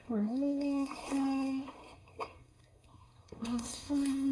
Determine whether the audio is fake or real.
fake